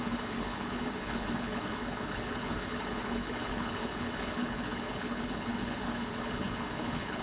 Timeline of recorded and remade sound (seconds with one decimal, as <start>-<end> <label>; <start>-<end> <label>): 0.0-7.2 remade